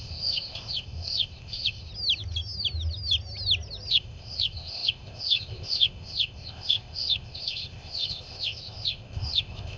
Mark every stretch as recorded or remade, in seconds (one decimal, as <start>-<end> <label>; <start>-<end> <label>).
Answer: 0.0-1.9 remade; 1.9-3.9 recorded; 3.9-9.8 remade